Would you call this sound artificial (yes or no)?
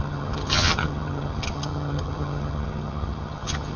yes